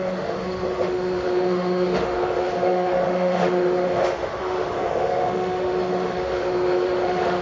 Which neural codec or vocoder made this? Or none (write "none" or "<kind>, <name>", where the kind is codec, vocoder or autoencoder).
autoencoder, DAC-VAE